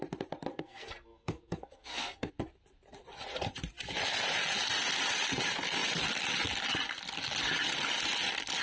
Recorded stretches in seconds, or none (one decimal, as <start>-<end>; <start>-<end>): 0.0-0.5; 2.3-8.6